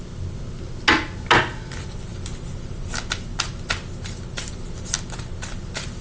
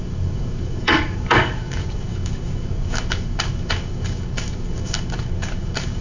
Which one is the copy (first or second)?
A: second